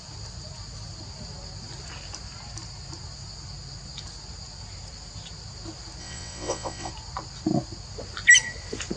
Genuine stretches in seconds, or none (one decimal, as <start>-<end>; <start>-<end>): 0.0-6.0; 6.9-9.0